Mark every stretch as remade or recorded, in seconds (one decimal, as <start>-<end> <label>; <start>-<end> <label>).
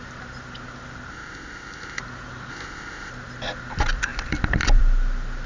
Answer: 0.0-1.1 recorded; 1.1-2.0 remade; 2.0-2.5 recorded; 2.5-3.1 remade; 3.1-5.5 recorded